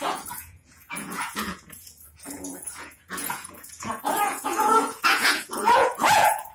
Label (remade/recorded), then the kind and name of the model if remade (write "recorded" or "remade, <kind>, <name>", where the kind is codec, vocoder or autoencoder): remade, vocoder, Vocos